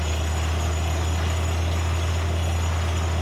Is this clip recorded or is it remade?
recorded